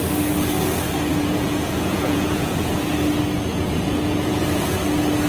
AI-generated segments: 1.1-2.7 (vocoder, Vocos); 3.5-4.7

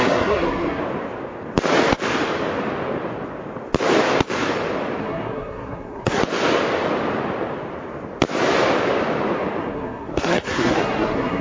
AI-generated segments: 0.0-0.8 (codec, SNAC); 5.0-6.2; 9.6-11.4

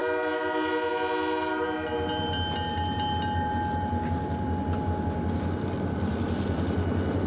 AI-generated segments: none

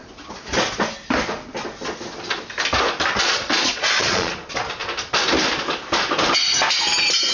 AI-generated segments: 3.2-4.3 (vocoder, Vocos)

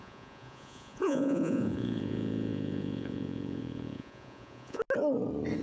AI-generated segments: 0.0-4.8 (vocoder, Vocos)

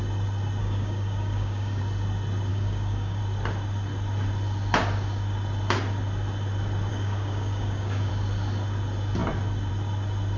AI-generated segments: 0.6-1.8 (codec, DAC); 2.5-3.2; 6.9-8.1